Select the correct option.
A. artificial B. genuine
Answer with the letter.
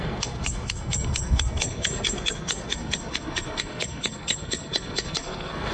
A